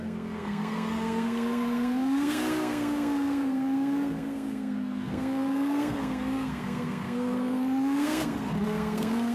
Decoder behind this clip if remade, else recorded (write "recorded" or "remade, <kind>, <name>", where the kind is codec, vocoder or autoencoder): remade, codec, SNAC